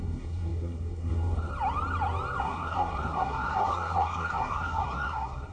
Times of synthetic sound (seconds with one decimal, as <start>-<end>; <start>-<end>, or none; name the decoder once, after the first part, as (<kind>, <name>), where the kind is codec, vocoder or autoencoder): 0.0-1.5 (codec, SNAC); 2.4-5.5

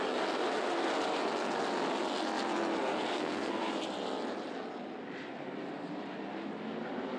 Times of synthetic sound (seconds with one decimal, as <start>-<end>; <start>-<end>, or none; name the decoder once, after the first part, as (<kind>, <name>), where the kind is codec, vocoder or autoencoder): 3.1-3.7 (codec, SNAC)

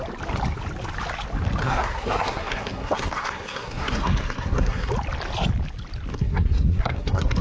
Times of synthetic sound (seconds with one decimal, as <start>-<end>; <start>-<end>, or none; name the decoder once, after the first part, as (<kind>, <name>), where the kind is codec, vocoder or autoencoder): 1.6-4.9 (codec, SNAC); 6.1-7.4

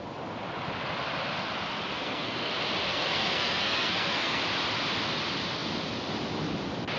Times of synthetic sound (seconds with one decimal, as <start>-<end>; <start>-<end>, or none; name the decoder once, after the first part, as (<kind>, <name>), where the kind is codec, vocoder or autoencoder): 1.9-2.5 (codec, SNAC); 2.9-4.4

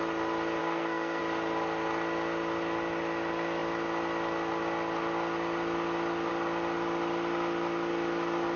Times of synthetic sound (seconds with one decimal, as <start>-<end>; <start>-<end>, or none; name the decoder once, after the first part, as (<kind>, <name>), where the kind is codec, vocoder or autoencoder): 0.6-1.2 (codec, SNAC)

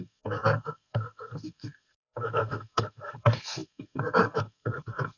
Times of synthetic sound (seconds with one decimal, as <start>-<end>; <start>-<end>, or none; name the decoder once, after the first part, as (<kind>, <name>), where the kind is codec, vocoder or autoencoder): 0.0-5.2 (codec, SNAC)

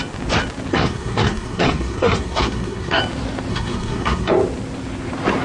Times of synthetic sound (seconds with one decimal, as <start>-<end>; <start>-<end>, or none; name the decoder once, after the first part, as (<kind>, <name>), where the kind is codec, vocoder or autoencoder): 0.7-3.0 (codec, SNAC); 3.5-4.3